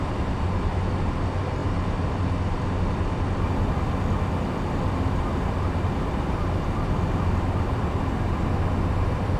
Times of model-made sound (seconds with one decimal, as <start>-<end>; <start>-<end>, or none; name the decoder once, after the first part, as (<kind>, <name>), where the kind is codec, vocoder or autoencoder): none